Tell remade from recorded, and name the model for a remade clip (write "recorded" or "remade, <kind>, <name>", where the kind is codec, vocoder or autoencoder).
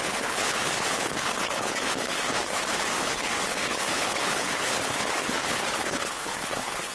remade, codec, HILCodec